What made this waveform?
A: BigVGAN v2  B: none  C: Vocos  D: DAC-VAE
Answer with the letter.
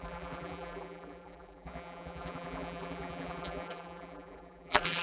A